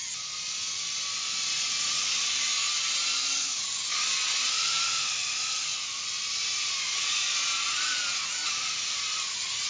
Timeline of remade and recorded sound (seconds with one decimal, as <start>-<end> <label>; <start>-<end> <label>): 0.0-1.7 recorded; 1.7-2.5 remade; 2.5-3.4 recorded; 3.4-9.7 remade